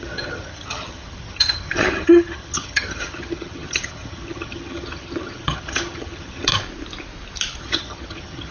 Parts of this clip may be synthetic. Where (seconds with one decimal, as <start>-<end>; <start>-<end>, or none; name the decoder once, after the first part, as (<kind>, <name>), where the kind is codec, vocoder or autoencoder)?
0.0-6.5 (vocoder, HiFi-GAN); 7.6-8.5